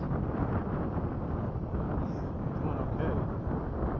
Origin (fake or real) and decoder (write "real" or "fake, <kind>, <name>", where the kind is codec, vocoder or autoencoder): real